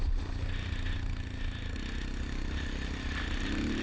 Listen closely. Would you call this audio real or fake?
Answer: real